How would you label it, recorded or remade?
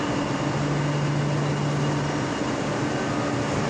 recorded